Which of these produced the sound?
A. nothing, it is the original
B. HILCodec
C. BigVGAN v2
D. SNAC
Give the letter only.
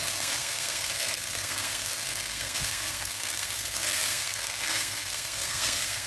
D